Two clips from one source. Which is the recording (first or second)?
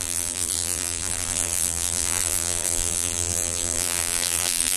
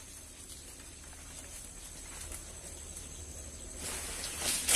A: second